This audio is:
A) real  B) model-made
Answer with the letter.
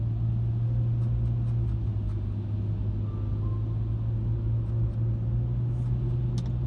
A